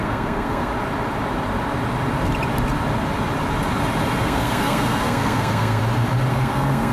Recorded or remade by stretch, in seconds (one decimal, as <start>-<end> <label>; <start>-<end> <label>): 0.0-0.7 remade; 0.7-4.2 recorded; 4.2-5.8 remade; 5.8-6.3 recorded; 6.3-6.9 remade